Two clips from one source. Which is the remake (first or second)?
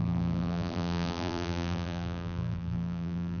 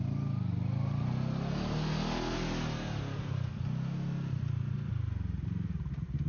first